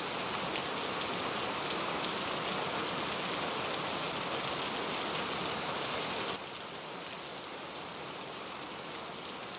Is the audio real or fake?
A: real